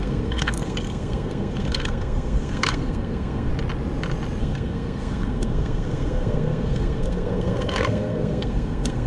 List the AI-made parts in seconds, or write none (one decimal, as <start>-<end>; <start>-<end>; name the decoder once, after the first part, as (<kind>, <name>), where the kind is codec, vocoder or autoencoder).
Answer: 0.0-3.5 (codec, SNAC); 4.4-9.1